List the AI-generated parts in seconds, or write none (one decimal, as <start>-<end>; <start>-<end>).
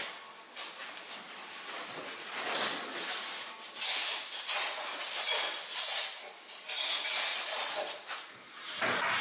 1.4-3.5; 4.0-5.0; 7.3-8.3